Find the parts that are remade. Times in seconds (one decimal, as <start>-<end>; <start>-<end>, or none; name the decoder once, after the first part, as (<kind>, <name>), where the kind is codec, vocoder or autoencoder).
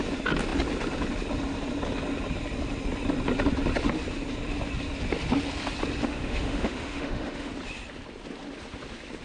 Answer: 6.0-7.5 (autoencoder, DAC-VAE)